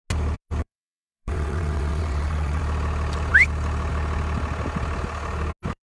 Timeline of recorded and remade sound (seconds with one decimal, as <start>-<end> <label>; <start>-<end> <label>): 0.0-0.6 recorded; 0.6-2.6 remade; 2.6-5.9 recorded